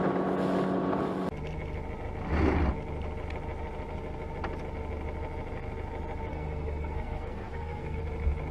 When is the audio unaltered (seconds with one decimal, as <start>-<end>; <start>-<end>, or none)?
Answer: 0.0-6.3; 8.0-8.5